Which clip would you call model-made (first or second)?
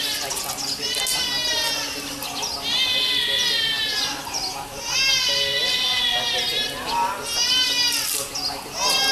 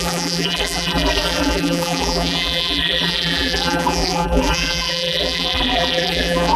second